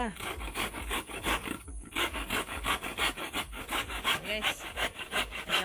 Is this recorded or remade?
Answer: remade